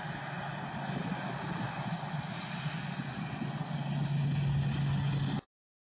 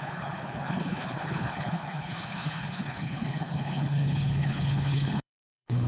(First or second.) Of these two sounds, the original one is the first